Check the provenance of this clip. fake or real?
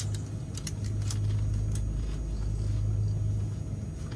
real